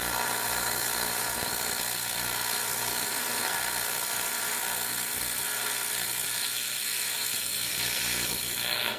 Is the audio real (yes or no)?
no